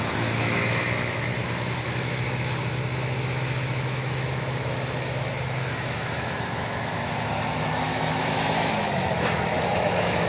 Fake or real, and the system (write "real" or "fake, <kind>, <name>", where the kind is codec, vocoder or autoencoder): fake, autoencoder, DAC-VAE